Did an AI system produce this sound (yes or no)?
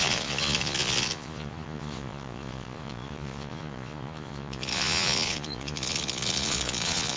yes